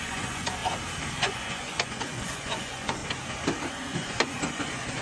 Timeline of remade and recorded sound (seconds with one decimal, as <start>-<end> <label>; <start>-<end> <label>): 0.0-0.6 remade; 0.6-1.2 recorded; 1.2-3.0 remade; 3.0-3.7 recorded; 3.7-5.0 remade